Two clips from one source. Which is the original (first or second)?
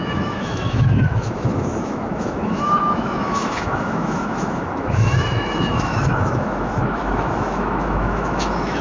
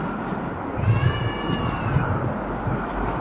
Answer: second